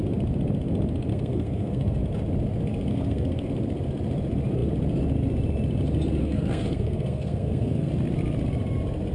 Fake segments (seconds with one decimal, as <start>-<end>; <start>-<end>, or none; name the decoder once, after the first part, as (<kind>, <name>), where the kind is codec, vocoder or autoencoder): 1.1-2.0 (codec, SNAC); 2.9-3.5; 6.2-7.9